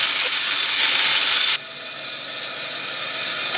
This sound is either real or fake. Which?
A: real